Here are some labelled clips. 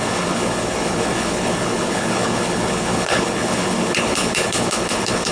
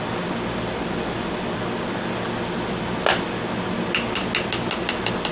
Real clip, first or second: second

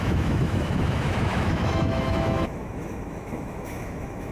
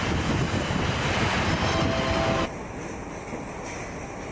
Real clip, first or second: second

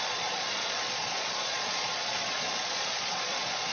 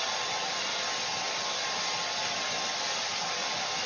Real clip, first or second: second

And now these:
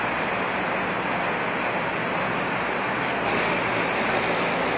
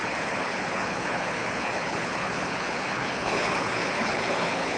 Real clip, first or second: first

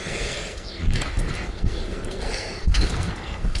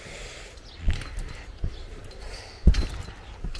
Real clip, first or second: second